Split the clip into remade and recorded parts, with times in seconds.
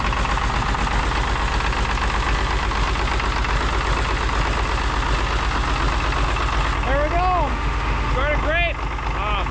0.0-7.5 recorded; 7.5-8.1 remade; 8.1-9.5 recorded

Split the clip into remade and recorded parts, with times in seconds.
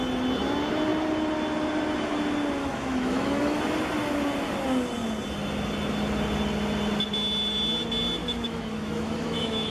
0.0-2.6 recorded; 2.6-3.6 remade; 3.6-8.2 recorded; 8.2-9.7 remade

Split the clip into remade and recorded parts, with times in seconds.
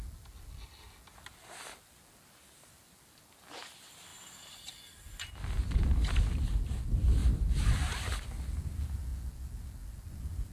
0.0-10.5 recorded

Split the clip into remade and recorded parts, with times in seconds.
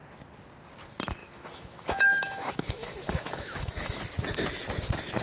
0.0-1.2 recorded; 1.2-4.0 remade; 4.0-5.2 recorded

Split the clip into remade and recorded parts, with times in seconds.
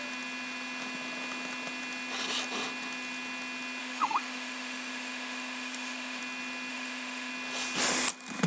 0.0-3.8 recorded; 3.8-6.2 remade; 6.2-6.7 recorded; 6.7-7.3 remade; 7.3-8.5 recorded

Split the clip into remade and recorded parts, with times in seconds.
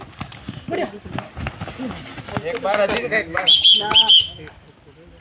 0.0-3.0 recorded; 3.0-4.5 remade; 4.5-5.2 recorded